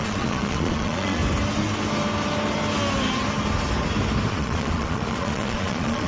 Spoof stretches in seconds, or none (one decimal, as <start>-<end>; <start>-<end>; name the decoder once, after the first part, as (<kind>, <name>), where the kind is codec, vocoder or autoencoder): 0.0-1.2 (vocoder, Vocos); 4.3-6.1